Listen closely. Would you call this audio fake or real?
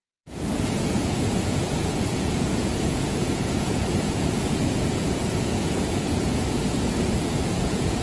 fake